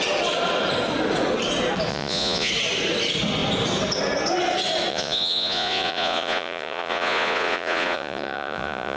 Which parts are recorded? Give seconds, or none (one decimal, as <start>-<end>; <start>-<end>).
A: 0.0-1.9; 2.5-4.9